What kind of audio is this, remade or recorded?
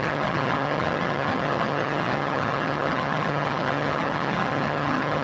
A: remade